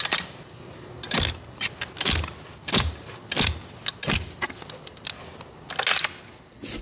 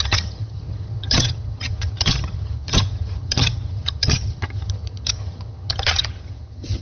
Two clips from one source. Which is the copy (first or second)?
second